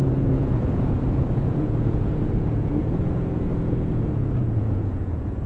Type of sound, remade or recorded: remade